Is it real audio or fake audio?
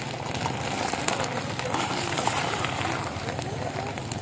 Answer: real